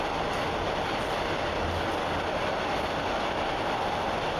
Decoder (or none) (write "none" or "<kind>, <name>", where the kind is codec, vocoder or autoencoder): none